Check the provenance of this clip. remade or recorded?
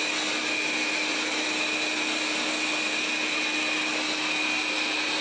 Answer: recorded